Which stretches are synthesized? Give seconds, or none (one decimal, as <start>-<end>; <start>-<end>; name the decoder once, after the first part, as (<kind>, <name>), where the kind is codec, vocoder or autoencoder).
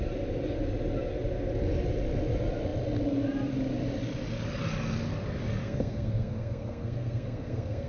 5.6-7.9 (codec, SNAC)